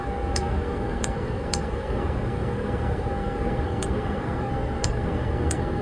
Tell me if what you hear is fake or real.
fake